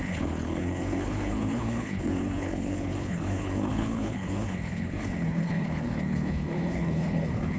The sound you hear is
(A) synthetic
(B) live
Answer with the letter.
A